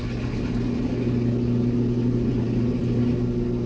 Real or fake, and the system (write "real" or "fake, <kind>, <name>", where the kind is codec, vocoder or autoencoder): real